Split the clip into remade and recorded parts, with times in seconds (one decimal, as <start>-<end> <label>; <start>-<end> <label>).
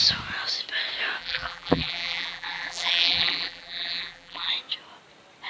0.0-1.2 recorded; 1.2-4.5 remade; 4.5-5.5 recorded